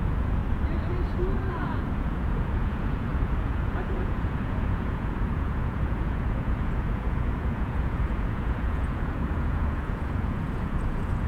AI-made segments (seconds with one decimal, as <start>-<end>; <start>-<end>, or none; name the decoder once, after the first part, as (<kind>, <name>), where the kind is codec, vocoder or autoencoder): 0.0-0.4 (vocoder, Vocos); 1.5-11.3